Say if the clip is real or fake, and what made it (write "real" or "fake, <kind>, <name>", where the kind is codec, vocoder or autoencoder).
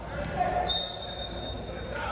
real